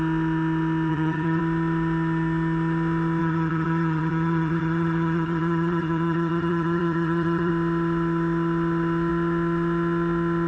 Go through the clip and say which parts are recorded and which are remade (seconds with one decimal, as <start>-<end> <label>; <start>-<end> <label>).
0.0-0.9 recorded; 0.9-1.4 remade; 1.4-3.2 recorded; 3.2-7.5 remade; 7.5-10.5 recorded